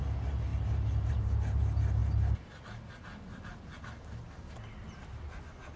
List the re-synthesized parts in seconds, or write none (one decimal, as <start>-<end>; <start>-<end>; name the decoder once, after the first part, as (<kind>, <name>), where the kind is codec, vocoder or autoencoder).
none